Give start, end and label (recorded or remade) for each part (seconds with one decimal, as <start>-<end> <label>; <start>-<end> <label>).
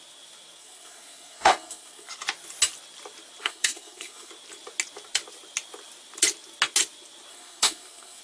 0.0-0.6 recorded; 0.6-2.1 remade; 2.1-3.4 recorded; 3.4-4.3 remade; 4.3-7.3 recorded; 7.3-8.2 remade